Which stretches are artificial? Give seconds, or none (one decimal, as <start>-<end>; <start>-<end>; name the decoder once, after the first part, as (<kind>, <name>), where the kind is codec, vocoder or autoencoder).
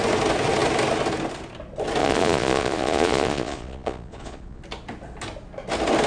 2.0-4.6 (vocoder, Vocos)